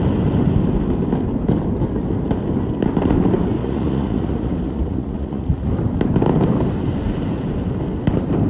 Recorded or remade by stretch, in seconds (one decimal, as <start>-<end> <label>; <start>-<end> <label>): 0.0-3.6 recorded; 3.6-5.7 remade; 5.7-8.5 recorded